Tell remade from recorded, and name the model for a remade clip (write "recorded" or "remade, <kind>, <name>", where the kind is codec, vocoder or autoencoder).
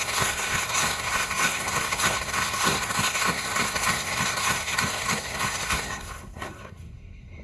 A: remade, codec, SNAC